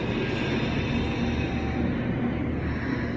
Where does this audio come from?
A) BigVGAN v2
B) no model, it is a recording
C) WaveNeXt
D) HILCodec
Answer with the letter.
B